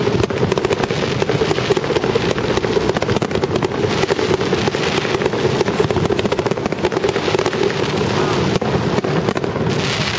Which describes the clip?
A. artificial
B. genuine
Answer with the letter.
B